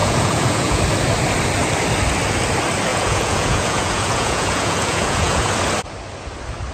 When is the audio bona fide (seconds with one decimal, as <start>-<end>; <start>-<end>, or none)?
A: 0.8-2.9; 5.5-6.7